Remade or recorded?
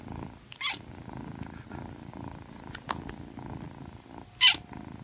recorded